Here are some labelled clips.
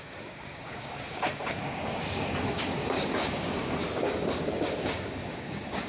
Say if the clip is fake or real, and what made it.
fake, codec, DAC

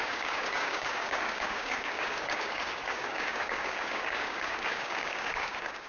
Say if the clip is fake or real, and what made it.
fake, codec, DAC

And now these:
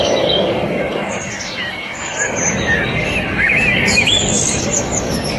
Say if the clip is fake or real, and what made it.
fake, codec, DAC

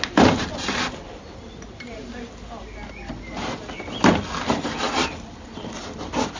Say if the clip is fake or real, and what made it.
real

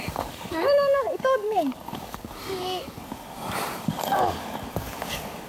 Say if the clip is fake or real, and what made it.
fake, codec, DAC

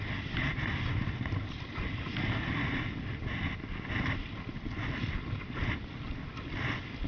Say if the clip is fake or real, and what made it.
real